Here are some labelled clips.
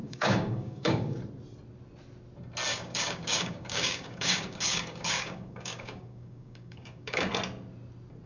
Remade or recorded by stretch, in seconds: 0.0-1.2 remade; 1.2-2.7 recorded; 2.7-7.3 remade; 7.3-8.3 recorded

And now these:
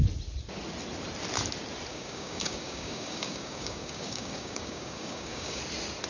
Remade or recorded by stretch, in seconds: 0.0-1.9 recorded; 1.9-5.6 remade; 5.6-6.1 recorded

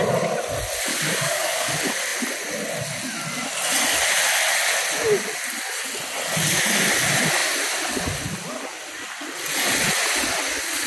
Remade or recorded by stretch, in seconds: 0.0-0.9 recorded; 0.9-1.7 remade; 1.7-10.9 recorded